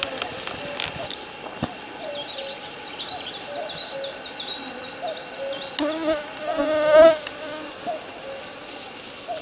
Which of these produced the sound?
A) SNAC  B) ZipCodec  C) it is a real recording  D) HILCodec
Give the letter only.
C